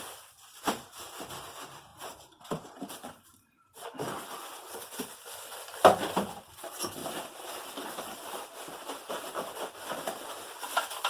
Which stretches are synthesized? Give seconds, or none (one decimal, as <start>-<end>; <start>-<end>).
1.9-3.6; 7.0-9.1